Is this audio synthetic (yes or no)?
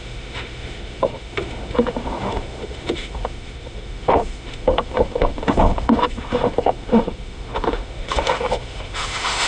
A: yes